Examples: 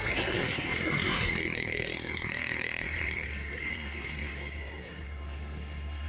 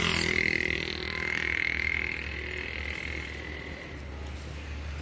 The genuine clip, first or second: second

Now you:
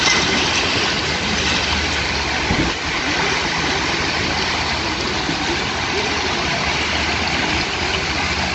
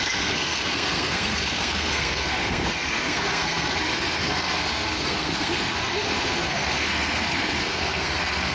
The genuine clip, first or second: first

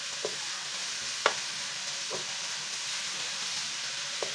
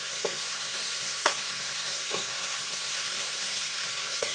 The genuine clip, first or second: first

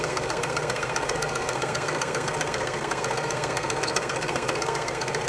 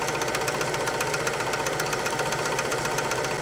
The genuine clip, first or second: second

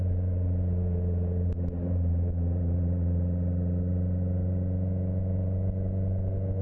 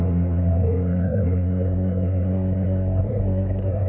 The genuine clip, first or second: first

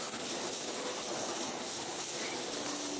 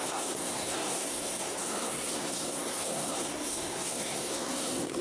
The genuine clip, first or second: first